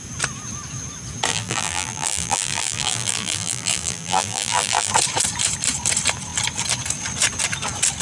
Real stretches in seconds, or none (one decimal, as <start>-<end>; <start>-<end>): 0.0-1.3; 4.9-8.0